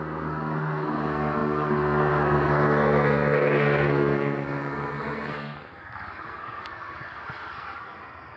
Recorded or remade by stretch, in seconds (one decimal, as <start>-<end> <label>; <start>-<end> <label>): 0.0-8.4 remade